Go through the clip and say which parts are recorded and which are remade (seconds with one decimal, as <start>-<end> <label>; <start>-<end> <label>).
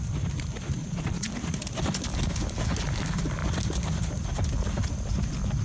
0.0-0.8 recorded; 0.8-1.3 remade; 1.3-5.6 recorded